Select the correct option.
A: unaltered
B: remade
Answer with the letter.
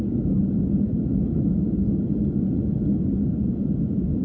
A